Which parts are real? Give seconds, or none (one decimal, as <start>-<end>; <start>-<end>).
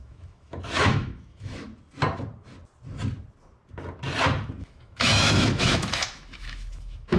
1.7-4.6